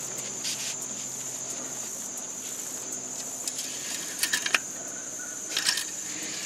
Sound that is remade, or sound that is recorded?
recorded